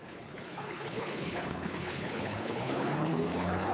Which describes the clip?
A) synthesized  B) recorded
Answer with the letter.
A